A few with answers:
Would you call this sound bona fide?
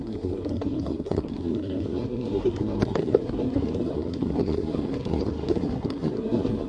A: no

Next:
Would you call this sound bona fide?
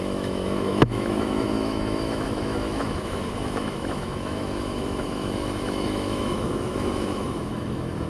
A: no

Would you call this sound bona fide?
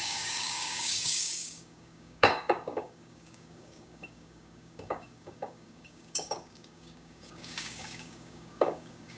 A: no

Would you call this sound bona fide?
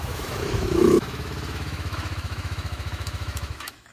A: no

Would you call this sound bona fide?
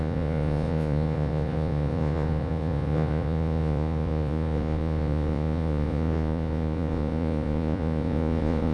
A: no